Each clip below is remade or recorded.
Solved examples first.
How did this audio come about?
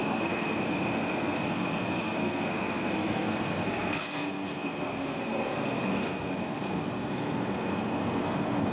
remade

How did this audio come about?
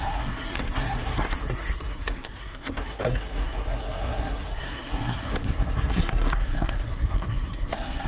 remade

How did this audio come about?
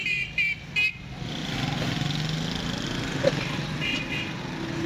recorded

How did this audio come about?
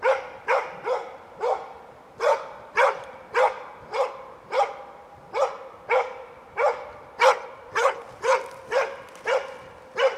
recorded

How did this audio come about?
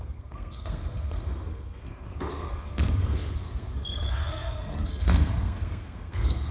remade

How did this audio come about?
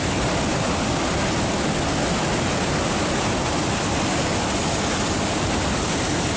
recorded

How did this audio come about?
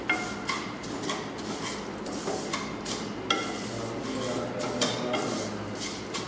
recorded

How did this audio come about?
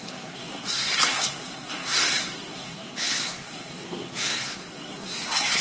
remade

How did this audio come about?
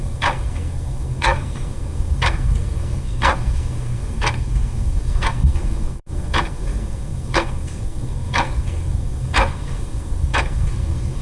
remade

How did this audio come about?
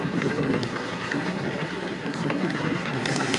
remade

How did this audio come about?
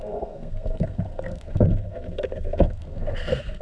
remade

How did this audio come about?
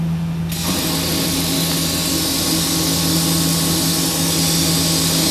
recorded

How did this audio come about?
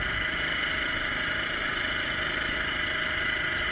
recorded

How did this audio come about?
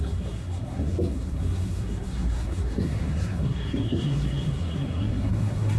remade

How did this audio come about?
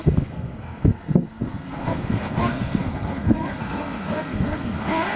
remade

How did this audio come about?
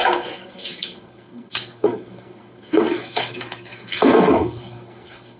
remade